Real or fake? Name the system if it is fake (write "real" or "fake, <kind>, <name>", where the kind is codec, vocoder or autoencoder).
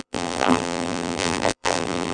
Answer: fake, vocoder, BigVGAN v2